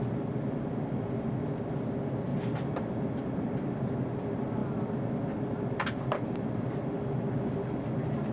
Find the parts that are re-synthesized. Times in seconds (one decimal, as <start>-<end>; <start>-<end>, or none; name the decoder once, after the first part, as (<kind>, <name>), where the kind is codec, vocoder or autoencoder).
2.3-3.7 (vocoder, BigVGAN v2)